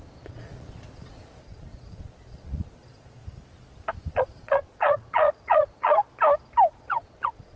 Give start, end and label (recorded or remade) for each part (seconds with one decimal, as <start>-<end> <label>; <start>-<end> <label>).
0.0-3.2 remade; 3.2-4.1 recorded; 4.1-6.1 remade; 6.1-6.8 recorded; 6.8-7.6 remade